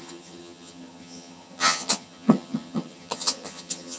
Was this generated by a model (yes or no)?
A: yes